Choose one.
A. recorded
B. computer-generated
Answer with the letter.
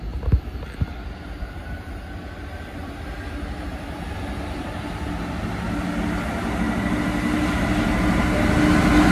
A